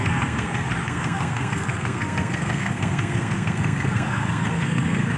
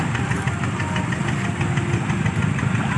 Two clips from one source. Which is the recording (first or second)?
second